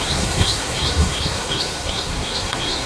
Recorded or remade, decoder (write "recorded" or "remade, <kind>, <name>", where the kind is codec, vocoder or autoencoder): remade, codec, SNAC